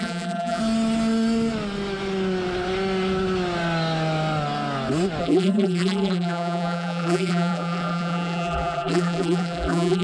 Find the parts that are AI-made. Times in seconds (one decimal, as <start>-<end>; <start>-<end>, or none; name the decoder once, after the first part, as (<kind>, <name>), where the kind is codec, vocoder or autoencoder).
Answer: 0.0-0.6 (vocoder, BigVGAN v2); 5.2-10.0